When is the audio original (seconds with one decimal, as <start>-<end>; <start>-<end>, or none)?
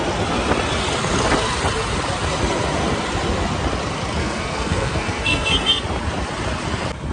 0.0-4.2; 5.8-7.1